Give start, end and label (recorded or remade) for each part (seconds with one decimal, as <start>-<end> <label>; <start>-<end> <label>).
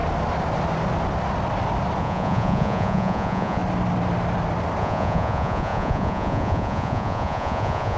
0.0-2.0 recorded; 2.0-3.6 remade; 3.6-4.8 recorded; 4.8-8.0 remade